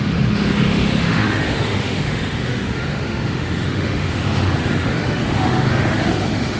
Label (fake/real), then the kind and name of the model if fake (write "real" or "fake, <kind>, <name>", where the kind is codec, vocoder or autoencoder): fake, autoencoder, DAC-VAE